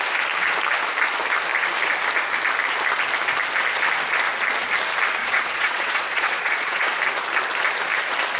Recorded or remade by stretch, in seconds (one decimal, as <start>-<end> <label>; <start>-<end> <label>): 0.0-5.2 recorded; 5.2-7.0 remade; 7.0-8.4 recorded